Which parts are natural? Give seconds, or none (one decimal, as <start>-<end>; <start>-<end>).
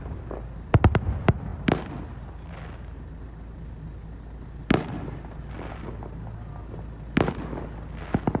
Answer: 0.0-8.4